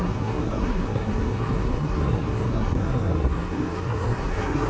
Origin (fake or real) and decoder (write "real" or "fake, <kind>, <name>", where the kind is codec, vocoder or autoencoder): fake, codec, SNAC